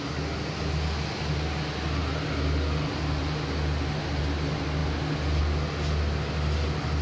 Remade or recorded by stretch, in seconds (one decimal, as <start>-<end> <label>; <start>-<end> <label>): 0.0-7.0 recorded